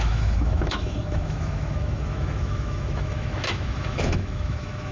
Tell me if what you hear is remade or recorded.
remade